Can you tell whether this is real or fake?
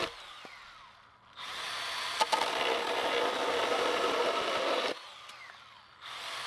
real